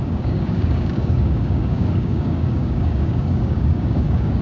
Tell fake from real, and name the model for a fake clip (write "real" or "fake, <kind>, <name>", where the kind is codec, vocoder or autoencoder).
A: fake, codec, DAC